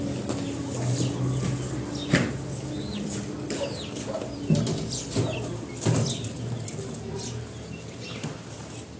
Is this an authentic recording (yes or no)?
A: yes